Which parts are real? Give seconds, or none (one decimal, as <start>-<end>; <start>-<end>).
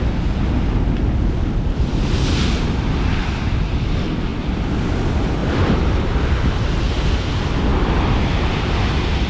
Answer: 0.0-4.3; 4.9-5.4; 6.0-9.3